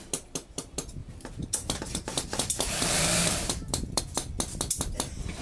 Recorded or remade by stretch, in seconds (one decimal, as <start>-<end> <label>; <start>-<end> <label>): 0.0-1.0 recorded; 1.0-4.0 remade; 4.0-5.4 recorded